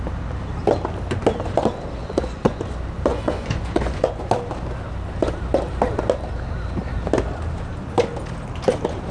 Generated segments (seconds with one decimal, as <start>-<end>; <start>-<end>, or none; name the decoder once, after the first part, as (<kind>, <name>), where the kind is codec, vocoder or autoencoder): 2.0-2.6 (vocoder, Vocos); 3.1-4.3